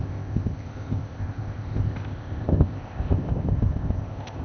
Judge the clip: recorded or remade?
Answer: remade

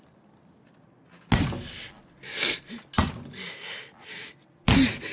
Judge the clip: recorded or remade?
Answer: recorded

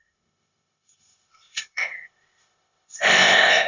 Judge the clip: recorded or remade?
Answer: remade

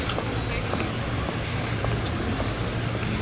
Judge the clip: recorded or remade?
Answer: recorded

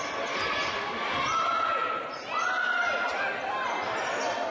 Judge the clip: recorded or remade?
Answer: recorded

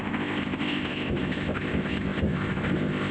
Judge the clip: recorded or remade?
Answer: remade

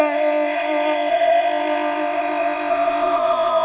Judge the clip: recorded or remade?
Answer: remade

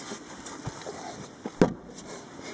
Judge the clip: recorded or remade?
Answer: recorded